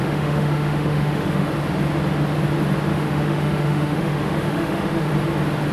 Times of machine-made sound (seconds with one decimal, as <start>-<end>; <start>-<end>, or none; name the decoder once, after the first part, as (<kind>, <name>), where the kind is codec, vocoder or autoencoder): 0.0-1.5 (autoencoder, DAC-VAE); 2.9-5.1